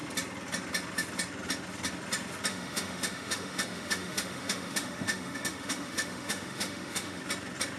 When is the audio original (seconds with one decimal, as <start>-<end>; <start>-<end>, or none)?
0.0-2.5; 7.2-7.8